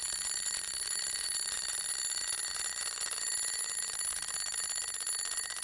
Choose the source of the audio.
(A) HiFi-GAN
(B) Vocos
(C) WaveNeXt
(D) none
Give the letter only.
B